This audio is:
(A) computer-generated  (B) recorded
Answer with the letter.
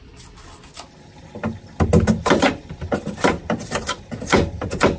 B